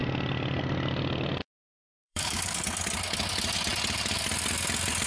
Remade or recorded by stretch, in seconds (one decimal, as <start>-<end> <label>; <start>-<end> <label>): 0.0-1.4 recorded; 1.4-2.6 remade; 2.6-5.1 recorded